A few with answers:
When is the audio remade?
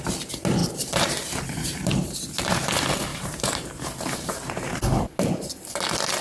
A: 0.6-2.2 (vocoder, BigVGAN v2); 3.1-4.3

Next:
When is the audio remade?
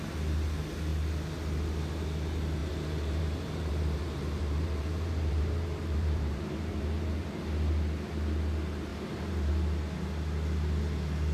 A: 2.6-7.5 (vocoder, BigVGAN v2); 8.9-9.5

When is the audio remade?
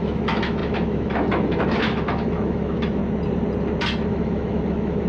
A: 0.0-3.0 (autoencoder, DAC-VAE); 4.1-5.1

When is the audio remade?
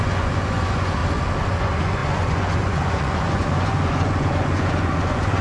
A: 0.0-1.0 (vocoder, Vocos); 1.6-5.4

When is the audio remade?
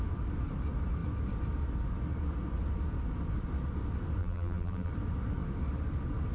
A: 4.2-4.9 (vocoder, BigVGAN v2)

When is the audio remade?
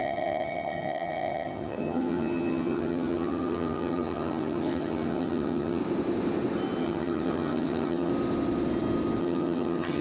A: 0.0-5.8 (vocoder, HiFi-GAN); 6.8-8.1; 9.2-10.0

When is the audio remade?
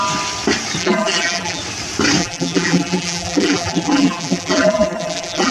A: 0.8-1.6 (vocoder, BigVGAN v2); 2.2-5.5